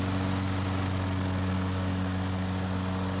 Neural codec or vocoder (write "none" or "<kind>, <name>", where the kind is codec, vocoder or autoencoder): none